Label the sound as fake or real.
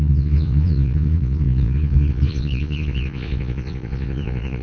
fake